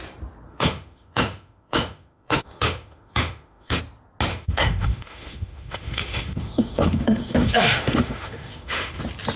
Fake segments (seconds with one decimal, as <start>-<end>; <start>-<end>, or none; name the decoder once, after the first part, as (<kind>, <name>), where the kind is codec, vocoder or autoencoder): 0.5-3.8 (autoencoder, DAC-VAE); 4.3-9.0